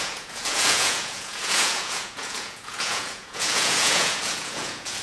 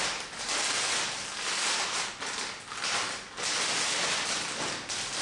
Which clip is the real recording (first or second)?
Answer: second